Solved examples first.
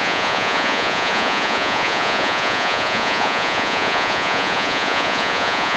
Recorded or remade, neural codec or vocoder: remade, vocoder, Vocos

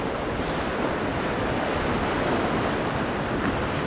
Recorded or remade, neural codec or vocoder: recorded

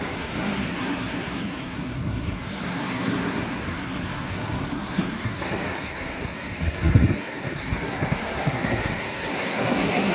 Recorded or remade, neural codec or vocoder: remade, codec, SNAC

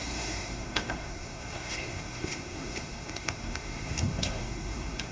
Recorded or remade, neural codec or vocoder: remade, codec, SNAC